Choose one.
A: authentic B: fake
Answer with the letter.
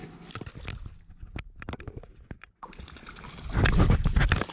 A